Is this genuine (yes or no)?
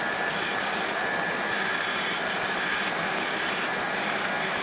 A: yes